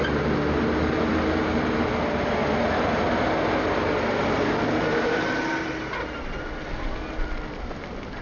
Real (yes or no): yes